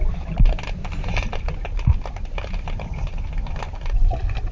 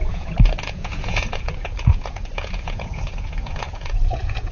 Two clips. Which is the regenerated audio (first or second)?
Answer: second